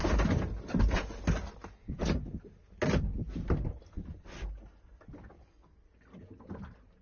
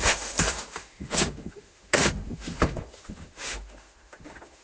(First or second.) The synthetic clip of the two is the second